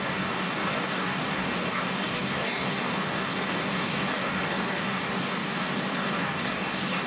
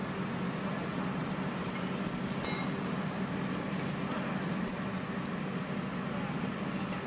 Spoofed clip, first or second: first